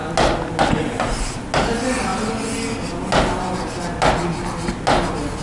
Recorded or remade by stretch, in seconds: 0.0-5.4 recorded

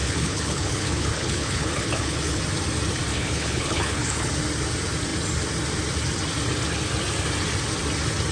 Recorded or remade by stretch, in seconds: 0.0-2.4 remade; 2.4-3.1 recorded; 3.1-4.3 remade; 4.3-8.3 recorded